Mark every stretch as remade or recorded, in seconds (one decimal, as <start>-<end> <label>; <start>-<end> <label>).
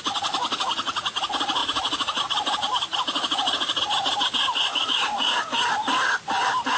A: 0.0-4.7 recorded; 4.7-5.5 remade; 5.5-6.8 recorded